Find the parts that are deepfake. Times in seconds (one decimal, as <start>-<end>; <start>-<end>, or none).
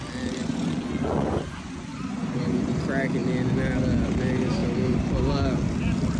0.4-2.8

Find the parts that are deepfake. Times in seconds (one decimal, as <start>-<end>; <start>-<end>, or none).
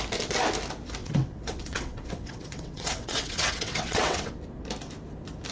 1.0-4.3